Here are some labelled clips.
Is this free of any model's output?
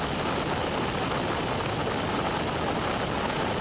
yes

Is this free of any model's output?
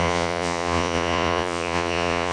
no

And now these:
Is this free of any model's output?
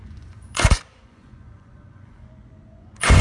no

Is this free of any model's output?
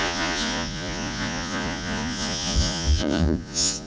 no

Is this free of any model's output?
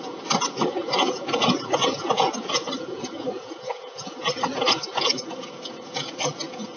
no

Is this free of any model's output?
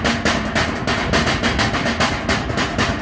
yes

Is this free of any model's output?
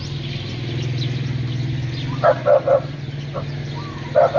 yes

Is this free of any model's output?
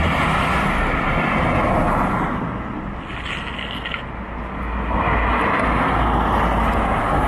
yes